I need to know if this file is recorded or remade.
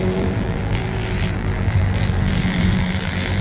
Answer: remade